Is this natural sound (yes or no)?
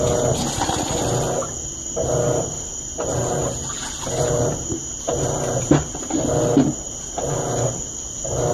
yes